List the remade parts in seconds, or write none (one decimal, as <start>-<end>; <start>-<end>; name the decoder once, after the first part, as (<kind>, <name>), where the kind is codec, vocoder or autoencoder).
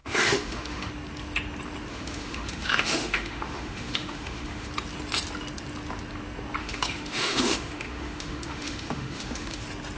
0.0-0.9 (autoencoder, DAC-VAE); 1.9-4.7; 6.6-9.6